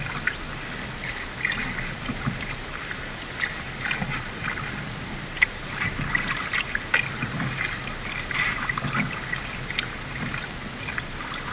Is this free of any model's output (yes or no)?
yes